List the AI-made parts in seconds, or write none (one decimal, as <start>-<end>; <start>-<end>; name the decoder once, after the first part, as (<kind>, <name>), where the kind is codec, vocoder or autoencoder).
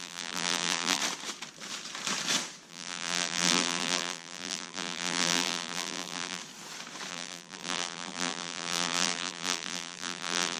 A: 0.0-1.0 (vocoder, BigVGAN v2); 2.7-6.4; 7.1-10.6